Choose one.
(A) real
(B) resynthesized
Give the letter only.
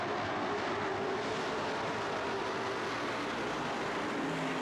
A